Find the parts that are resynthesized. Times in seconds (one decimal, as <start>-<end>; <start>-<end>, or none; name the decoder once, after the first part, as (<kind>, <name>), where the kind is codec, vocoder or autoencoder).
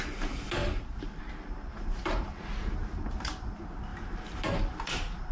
0.6-1.2 (vocoder, BigVGAN v2); 1.7-2.3